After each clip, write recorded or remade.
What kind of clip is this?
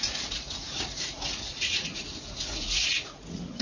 remade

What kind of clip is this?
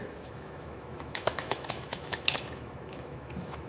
remade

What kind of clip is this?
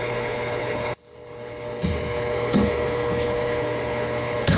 remade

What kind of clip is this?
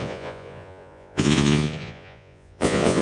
remade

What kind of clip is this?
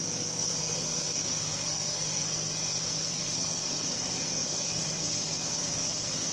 remade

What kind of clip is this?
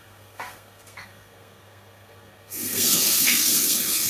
remade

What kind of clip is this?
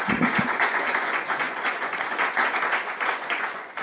remade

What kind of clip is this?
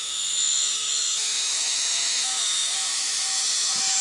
remade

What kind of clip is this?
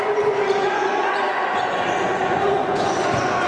remade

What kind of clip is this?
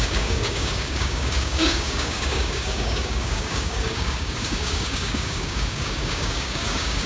remade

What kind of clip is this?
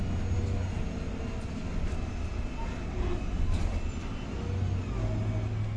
recorded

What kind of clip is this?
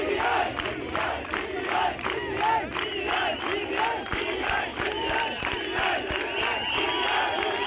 recorded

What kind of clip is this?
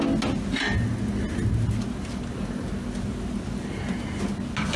recorded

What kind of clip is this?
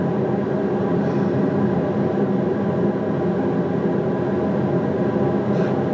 recorded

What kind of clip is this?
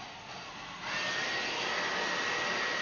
recorded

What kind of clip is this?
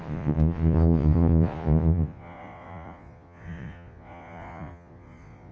remade